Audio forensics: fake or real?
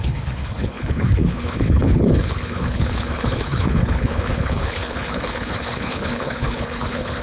fake